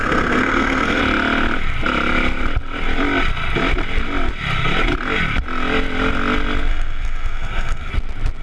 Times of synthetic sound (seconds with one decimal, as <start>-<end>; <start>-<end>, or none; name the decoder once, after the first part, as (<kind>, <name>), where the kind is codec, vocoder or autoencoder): 0.0-1.0 (codec, SNAC); 6.7-7.9